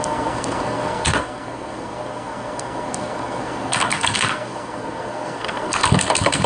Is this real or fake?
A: fake